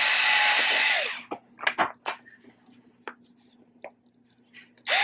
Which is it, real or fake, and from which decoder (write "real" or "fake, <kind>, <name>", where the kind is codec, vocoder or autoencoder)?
real